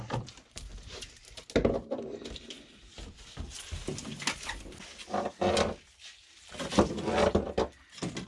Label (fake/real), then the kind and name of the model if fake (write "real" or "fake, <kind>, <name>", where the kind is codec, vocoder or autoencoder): real